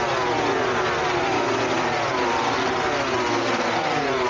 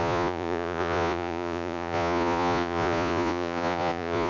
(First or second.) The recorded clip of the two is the first